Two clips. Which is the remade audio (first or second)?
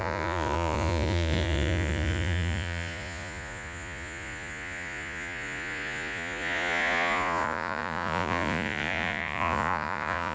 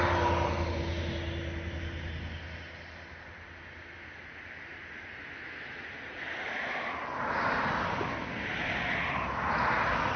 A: first